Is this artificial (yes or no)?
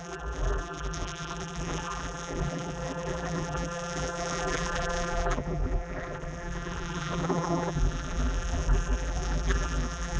yes